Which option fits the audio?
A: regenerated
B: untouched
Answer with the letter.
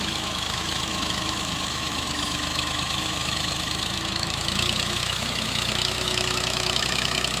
A